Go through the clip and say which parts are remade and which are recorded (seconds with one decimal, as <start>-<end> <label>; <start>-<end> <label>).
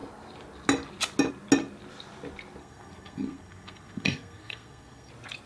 0.0-2.6 recorded; 2.6-5.1 remade; 5.1-5.5 recorded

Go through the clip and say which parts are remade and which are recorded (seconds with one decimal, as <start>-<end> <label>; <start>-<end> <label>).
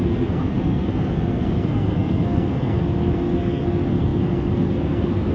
0.0-5.3 remade